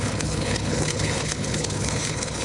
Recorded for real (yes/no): no